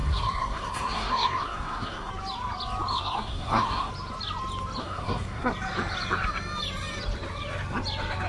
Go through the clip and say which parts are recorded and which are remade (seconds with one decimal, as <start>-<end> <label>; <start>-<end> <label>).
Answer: 0.0-2.1 remade; 2.1-2.9 recorded; 2.9-3.9 remade; 3.9-4.8 recorded; 4.8-5.5 remade; 5.5-8.3 recorded